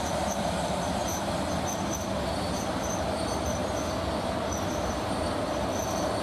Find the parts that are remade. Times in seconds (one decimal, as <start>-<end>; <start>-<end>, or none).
none